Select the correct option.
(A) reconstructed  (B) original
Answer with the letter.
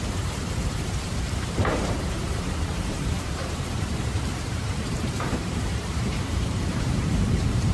A